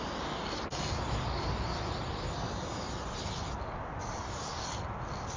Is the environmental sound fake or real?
real